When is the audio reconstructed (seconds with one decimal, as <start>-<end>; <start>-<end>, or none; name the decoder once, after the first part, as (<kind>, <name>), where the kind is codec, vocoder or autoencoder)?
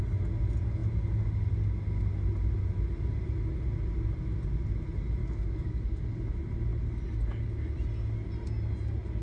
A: 5.2-6.0 (codec, DAC)